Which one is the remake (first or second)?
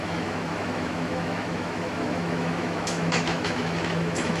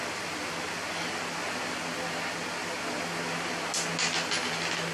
first